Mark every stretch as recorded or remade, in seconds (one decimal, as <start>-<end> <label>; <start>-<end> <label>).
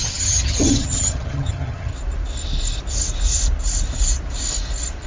0.0-1.9 remade; 1.9-5.1 recorded